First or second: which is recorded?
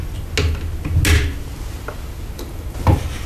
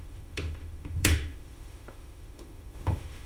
first